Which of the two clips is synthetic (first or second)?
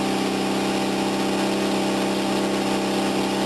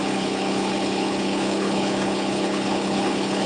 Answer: second